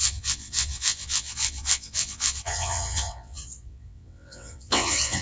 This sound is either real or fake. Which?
fake